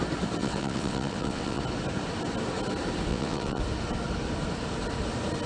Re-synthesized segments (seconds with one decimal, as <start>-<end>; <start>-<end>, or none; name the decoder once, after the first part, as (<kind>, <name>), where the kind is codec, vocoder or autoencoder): 0.4-1.6 (vocoder, WaveNeXt); 3.1-3.6